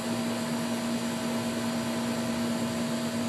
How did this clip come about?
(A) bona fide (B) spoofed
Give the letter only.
A